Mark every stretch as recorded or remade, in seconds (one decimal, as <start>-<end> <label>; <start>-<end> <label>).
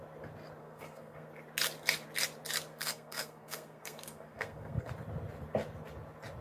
0.0-0.6 recorded; 0.6-1.3 remade; 1.3-2.7 recorded; 2.7-4.9 remade; 4.9-6.4 recorded